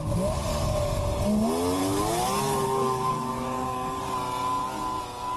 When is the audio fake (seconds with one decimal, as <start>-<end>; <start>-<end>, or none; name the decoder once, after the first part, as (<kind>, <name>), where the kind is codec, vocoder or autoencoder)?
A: 0.5-1.0 (codec, DAC); 1.8-4.0